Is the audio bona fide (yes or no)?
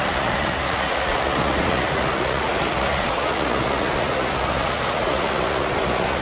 no